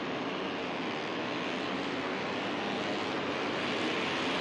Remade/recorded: recorded